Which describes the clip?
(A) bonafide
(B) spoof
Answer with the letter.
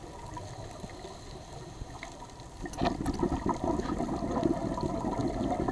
A